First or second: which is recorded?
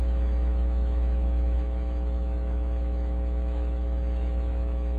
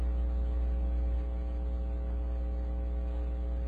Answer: second